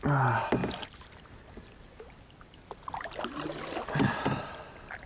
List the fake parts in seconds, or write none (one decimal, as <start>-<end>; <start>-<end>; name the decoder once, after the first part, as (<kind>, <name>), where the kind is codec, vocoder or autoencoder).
none